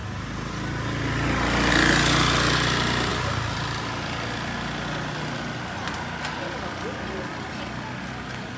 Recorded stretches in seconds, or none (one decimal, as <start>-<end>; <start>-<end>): 0.0-8.6